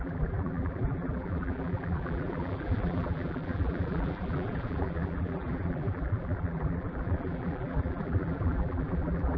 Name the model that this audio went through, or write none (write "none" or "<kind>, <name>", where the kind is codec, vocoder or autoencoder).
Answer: vocoder, BigVGAN v2